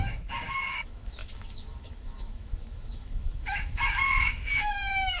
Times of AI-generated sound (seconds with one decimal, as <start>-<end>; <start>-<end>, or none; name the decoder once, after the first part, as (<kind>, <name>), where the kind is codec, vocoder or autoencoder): 0.0-5.2 (autoencoder, DAC-VAE)